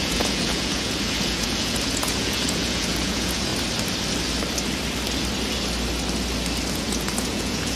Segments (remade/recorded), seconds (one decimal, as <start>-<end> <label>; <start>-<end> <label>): 0.0-3.5 remade; 3.5-6.7 recorded; 6.7-7.8 remade